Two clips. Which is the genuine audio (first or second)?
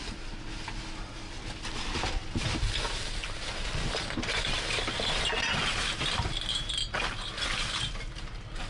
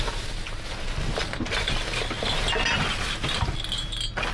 second